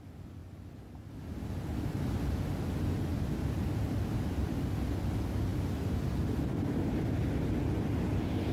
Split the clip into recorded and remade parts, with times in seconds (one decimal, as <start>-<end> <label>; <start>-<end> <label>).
0.0-5.5 recorded; 5.5-7.2 remade; 7.2-8.5 recorded